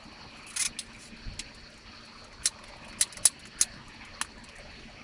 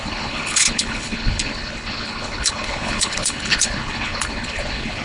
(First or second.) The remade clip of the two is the second